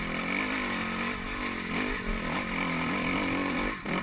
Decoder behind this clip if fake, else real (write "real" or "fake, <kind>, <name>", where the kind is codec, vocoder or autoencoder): real